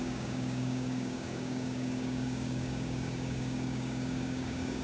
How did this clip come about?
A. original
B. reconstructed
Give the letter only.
B